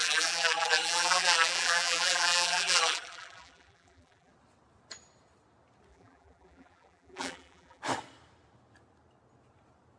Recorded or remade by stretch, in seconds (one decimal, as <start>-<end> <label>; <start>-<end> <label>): 0.0-4.3 remade; 4.3-5.9 recorded; 5.9-7.8 remade; 7.8-10.0 recorded